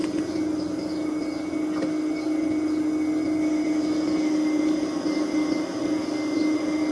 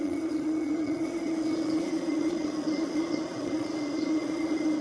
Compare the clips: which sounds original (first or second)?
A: first